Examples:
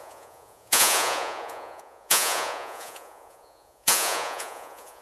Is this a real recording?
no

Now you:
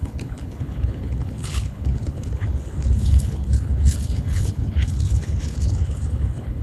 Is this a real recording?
no